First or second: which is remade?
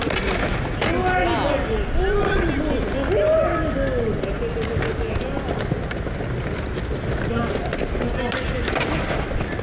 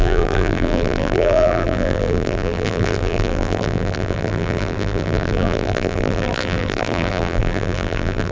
second